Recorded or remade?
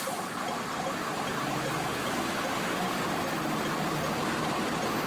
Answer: recorded